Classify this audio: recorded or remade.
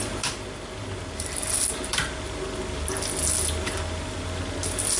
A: recorded